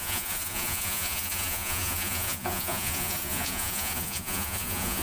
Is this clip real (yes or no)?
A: no